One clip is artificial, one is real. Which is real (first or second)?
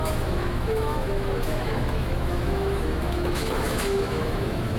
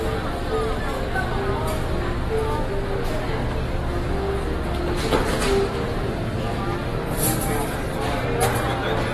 second